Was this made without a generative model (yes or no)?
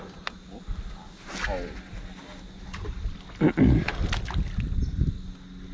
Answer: yes